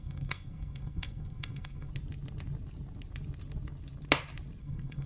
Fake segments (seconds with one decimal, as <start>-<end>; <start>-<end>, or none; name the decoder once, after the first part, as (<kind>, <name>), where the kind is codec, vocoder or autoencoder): 0.0-1.9 (codec, SNAC); 4.6-5.1